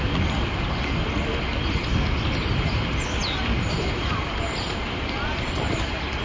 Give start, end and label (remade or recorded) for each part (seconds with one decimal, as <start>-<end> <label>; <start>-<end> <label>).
0.0-6.2 recorded